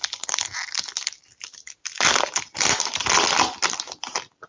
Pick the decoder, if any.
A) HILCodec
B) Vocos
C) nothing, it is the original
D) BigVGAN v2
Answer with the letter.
C